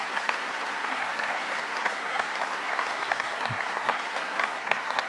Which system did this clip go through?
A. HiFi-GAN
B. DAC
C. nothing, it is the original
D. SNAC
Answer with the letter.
D